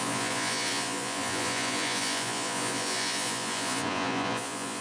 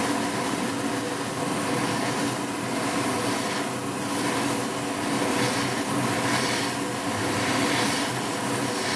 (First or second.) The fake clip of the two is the first